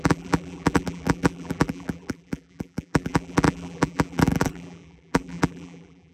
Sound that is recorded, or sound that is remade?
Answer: remade